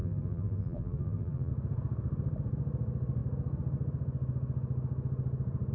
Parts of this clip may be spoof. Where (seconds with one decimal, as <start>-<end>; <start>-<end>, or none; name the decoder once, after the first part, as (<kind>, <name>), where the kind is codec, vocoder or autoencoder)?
0.0-1.5 (vocoder, BigVGAN v2)